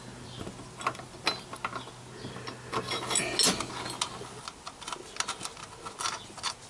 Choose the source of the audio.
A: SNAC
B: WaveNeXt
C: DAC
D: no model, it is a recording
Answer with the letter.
D